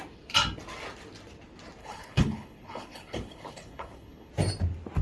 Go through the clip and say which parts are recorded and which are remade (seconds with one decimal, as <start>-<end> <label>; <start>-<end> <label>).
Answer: 0.0-1.8 recorded; 1.8-4.3 remade; 4.3-5.0 recorded